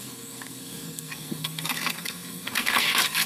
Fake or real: fake